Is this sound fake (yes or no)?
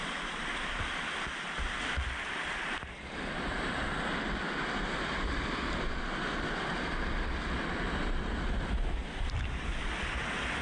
no